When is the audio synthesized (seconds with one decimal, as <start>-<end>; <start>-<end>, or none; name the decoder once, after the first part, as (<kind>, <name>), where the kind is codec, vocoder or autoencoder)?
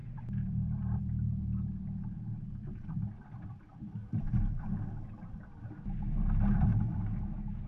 0.0-1.0 (vocoder, BigVGAN v2); 2.0-2.9; 3.7-4.7